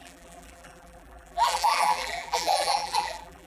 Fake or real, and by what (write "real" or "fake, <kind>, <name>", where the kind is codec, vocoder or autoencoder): fake, vocoder, BigVGAN v2